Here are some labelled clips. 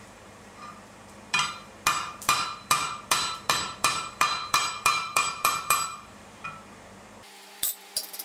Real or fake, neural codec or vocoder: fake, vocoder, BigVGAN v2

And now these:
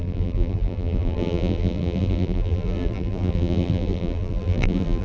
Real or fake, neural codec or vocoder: fake, vocoder, BigVGAN v2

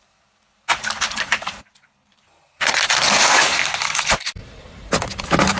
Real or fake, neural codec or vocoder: real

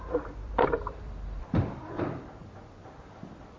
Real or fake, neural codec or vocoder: fake, vocoder, BigVGAN v2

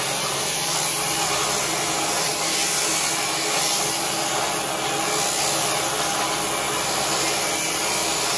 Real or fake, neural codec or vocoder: real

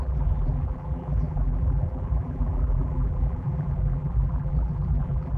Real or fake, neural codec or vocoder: fake, vocoder, BigVGAN v2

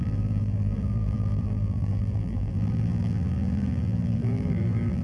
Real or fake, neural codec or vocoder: fake, vocoder, BigVGAN v2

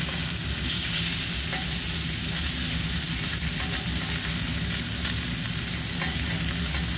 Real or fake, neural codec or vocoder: real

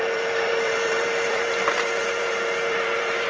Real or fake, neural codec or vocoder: fake, vocoder, BigVGAN v2